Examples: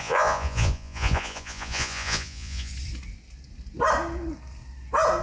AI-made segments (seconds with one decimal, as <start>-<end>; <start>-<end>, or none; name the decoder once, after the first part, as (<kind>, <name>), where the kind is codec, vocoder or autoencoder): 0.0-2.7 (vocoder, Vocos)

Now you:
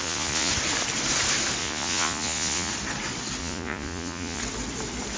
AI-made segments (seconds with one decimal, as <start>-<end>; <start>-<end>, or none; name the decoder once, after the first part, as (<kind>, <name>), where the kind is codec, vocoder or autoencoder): 0.0-0.5 (vocoder, Vocos); 1.6-2.7; 3.4-4.4

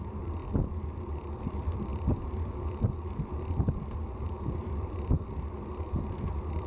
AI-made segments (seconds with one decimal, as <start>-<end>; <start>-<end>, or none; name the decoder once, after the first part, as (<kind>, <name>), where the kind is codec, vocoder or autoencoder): 0.0-0.4 (vocoder, BigVGAN v2); 1.1-6.7